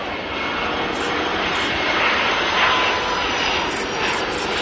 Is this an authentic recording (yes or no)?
yes